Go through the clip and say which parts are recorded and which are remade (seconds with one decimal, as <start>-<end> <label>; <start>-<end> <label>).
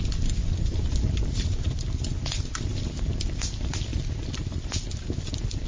0.0-5.7 recorded